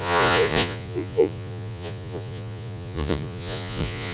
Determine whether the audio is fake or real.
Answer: fake